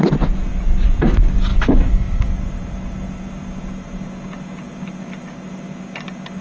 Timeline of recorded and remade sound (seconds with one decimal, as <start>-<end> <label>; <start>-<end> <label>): 0.0-1.5 recorded; 1.5-2.3 remade; 2.3-6.4 recorded